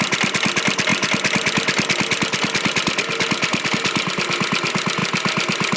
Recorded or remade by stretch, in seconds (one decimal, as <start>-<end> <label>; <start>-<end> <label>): 0.0-5.8 recorded